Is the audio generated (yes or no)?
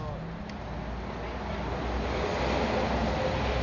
no